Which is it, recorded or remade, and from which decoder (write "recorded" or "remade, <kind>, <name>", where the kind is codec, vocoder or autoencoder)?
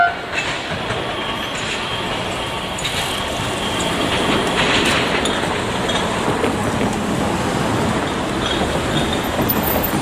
recorded